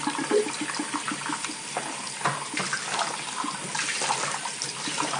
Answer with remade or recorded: recorded